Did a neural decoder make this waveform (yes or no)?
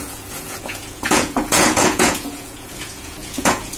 yes